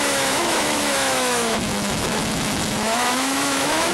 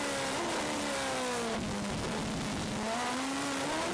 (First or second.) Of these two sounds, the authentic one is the second